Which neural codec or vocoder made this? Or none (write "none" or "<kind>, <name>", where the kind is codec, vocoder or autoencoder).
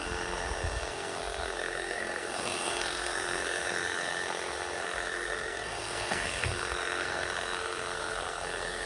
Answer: codec, SNAC